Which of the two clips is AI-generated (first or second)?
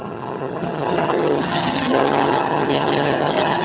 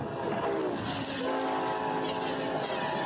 first